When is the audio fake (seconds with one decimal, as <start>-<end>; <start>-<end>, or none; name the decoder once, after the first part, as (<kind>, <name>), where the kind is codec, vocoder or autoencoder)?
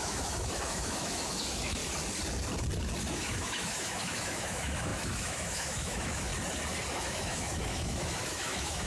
0.0-1.8 (autoencoder, DAC-VAE); 3.1-6.3; 6.9-8.9